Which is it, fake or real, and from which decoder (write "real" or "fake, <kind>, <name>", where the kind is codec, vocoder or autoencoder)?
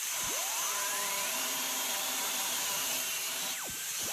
fake, vocoder, BigVGAN v2